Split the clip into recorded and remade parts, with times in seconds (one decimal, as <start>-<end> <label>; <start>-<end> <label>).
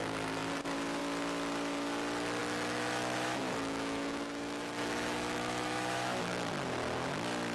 0.0-2.4 recorded; 2.4-6.5 remade; 6.5-7.5 recorded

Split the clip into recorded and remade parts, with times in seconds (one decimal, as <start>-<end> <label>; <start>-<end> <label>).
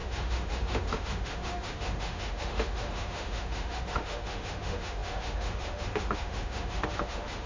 0.0-7.5 remade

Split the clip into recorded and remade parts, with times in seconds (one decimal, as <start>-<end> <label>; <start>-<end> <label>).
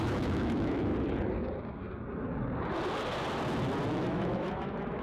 0.0-0.9 remade; 0.9-3.9 recorded; 3.9-5.0 remade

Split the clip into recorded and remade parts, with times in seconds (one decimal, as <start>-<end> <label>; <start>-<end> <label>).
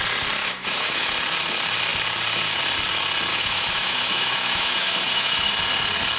0.0-0.4 recorded; 0.4-1.1 remade; 1.1-3.3 recorded; 3.3-5.5 remade; 5.5-6.2 recorded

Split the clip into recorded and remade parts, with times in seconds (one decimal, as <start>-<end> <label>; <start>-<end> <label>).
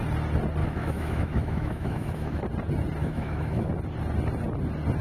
0.0-0.6 recorded; 0.6-2.4 remade; 2.4-3.0 recorded; 3.0-3.7 remade; 3.7-5.0 recorded